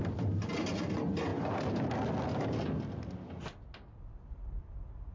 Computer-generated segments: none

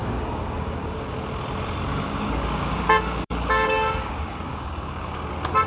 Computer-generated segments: 0.0-1.0 (codec, DAC); 1.9-5.3

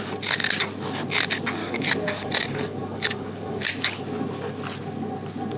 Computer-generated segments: 1.6-3.7 (codec, DAC)

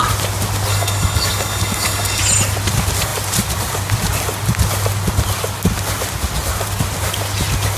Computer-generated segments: 0.7-2.2 (codec, DAC)

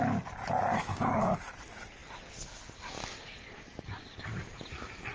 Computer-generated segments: 0.7-1.5 (codec, DAC)

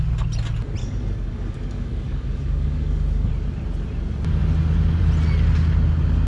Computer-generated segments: 0.8-3.3 (codec, DAC)

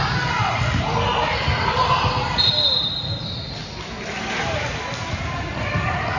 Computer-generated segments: none

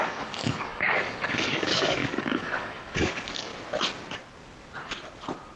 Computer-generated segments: 0.0-3.5 (codec, DAC)